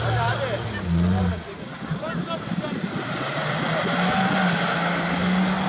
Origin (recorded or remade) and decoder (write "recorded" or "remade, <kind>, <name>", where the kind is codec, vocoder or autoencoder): recorded